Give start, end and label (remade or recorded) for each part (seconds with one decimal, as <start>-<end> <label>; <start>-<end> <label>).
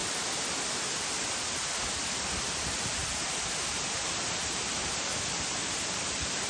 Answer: 0.0-6.5 remade